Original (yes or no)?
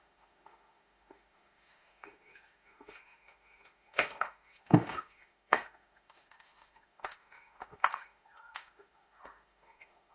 no